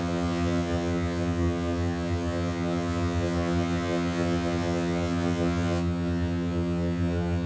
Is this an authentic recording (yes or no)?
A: no